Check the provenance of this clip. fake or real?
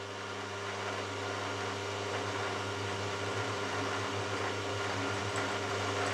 real